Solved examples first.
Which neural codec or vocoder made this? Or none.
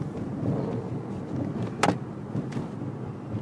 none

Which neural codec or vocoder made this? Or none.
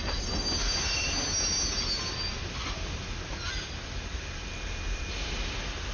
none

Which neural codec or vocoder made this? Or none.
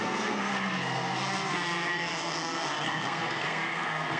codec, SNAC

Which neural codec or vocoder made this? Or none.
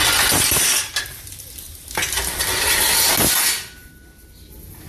none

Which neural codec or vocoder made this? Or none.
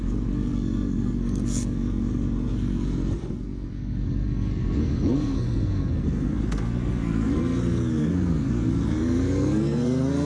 codec, SNAC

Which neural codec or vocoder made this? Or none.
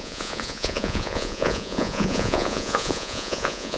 vocoder, Vocos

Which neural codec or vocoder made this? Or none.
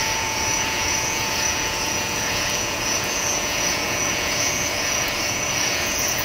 vocoder, Vocos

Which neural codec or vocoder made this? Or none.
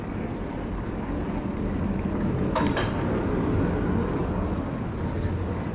none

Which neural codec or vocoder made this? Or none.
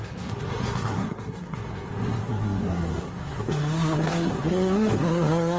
codec, SNAC